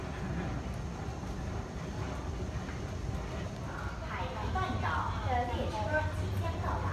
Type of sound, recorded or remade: recorded